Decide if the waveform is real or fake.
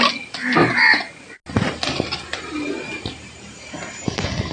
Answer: real